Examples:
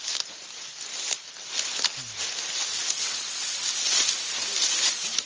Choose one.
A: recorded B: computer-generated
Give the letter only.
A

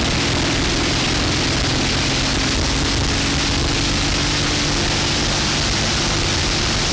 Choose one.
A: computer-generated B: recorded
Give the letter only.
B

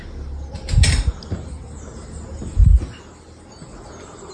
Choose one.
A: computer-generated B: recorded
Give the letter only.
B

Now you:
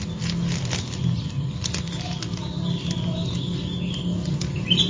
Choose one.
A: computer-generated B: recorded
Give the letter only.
B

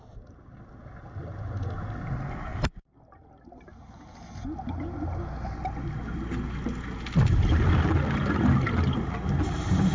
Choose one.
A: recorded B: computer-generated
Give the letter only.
A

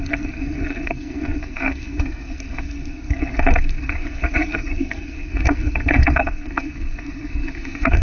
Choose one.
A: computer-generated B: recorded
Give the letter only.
A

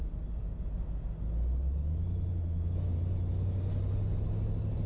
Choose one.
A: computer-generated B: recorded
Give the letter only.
B